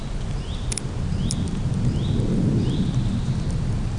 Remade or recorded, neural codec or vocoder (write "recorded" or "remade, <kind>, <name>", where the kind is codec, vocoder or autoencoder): recorded